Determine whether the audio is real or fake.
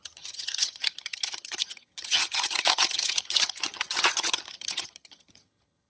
fake